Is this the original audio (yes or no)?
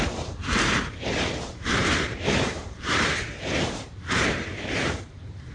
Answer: no